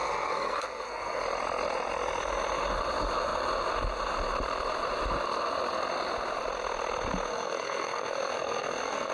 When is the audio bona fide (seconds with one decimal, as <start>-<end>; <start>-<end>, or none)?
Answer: 1.2-7.3